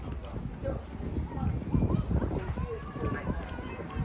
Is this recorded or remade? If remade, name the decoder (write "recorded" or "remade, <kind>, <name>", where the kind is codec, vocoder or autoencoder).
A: recorded